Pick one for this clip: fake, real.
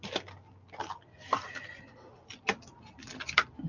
real